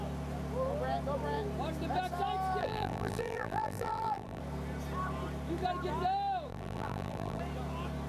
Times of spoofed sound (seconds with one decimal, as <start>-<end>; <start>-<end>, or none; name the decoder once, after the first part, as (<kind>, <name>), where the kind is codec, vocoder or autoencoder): 2.6-4.4 (vocoder, BigVGAN v2); 6.5-7.4